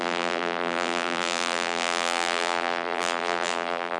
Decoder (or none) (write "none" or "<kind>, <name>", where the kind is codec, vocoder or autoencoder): vocoder, BigVGAN v2